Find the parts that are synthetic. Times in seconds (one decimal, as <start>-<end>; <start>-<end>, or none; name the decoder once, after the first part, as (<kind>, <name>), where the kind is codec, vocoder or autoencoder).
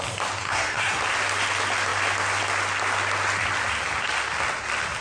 0.4-1.0 (codec, SNAC)